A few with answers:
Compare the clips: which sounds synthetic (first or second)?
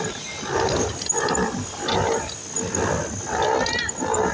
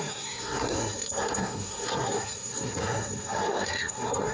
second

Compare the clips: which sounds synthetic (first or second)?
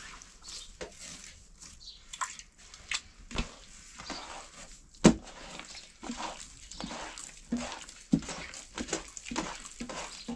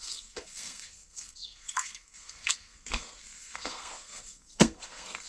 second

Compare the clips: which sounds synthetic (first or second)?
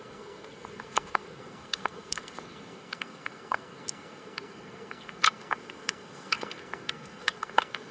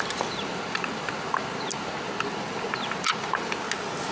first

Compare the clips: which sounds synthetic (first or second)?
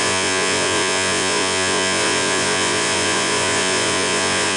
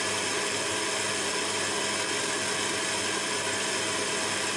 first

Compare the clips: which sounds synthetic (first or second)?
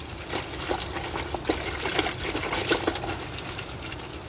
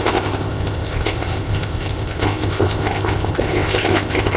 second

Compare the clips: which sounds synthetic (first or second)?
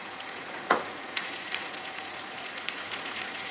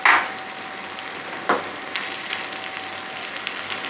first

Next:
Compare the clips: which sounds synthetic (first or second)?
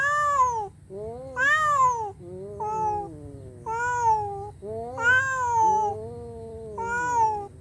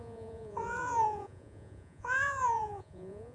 second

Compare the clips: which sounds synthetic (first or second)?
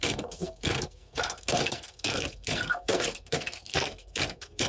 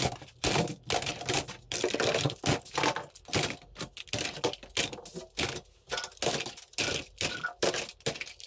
first